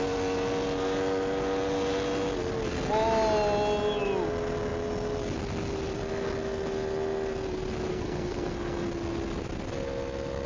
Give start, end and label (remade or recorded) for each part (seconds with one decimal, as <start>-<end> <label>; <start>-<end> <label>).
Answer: 0.0-7.9 recorded; 7.9-8.9 remade; 8.9-10.5 recorded